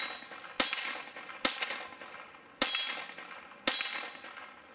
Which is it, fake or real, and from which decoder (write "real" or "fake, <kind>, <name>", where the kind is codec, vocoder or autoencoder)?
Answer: real